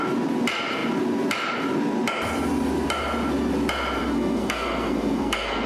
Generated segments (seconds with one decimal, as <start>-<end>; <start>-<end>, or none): 4.0-5.7